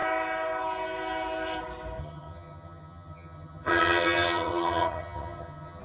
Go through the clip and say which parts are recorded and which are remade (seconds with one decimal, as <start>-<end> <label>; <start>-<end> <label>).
0.0-2.0 recorded; 2.0-5.8 remade